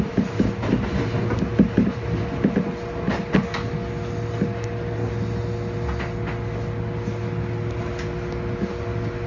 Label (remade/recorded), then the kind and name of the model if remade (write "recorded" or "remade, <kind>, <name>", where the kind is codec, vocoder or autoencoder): recorded